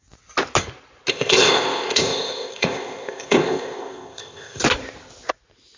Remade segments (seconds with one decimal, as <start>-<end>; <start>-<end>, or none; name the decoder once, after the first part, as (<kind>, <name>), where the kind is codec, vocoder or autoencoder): 1.1-4.6 (codec, ZipCodec)